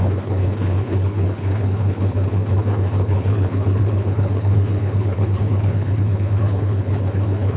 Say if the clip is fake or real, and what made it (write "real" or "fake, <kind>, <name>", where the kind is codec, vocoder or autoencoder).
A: fake, codec, HILCodec